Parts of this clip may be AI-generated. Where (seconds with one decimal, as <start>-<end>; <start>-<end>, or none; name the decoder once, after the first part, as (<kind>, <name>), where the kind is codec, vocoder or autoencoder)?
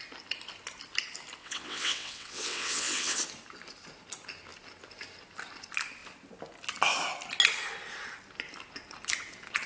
1.4-3.2 (vocoder, WaveNeXt)